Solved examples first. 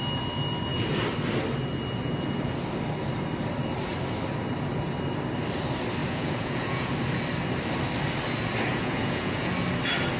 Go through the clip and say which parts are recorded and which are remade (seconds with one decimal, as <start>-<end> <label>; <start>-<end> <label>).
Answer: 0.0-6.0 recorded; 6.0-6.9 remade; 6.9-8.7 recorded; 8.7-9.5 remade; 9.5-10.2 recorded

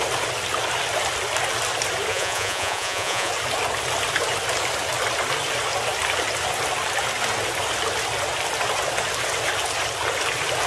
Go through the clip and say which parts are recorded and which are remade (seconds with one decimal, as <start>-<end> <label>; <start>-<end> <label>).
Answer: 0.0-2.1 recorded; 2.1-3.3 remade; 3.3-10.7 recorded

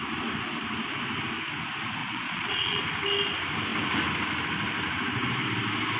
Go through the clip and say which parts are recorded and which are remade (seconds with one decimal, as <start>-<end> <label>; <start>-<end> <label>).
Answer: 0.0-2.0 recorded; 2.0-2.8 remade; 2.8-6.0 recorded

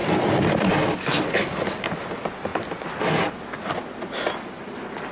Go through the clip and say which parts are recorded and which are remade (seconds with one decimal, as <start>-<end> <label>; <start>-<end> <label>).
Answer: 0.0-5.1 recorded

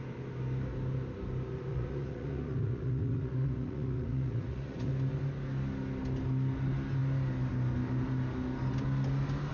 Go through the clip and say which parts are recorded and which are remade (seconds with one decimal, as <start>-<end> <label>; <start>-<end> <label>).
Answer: 0.0-1.7 recorded; 1.7-4.9 remade; 4.9-9.5 recorded

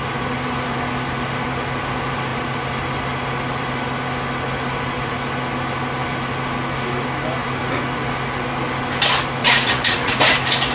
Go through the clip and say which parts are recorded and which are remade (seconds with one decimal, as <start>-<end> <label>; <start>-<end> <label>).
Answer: 0.0-9.4 recorded; 9.4-10.2 remade; 10.2-10.7 recorded